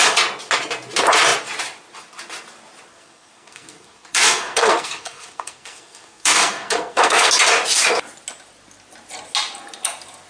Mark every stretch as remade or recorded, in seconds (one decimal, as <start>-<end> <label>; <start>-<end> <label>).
0.0-2.9 recorded; 2.9-7.3 remade; 7.3-10.3 recorded